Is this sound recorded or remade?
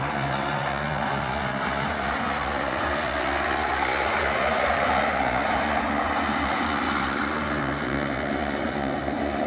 remade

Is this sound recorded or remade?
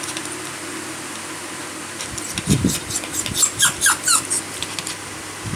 recorded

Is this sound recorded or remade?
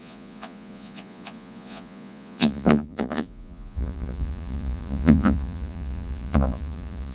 remade